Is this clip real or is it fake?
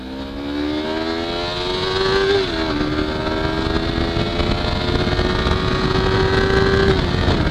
real